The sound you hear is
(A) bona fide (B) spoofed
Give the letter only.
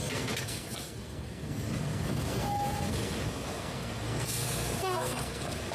B